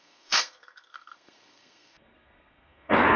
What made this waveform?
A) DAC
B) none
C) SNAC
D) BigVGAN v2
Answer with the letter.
C